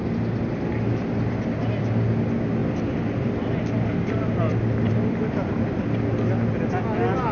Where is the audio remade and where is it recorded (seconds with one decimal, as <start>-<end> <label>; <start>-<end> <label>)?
0.0-7.3 recorded